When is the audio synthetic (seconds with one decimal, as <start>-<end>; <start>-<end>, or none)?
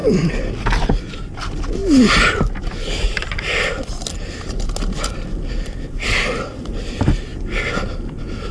0.0-0.5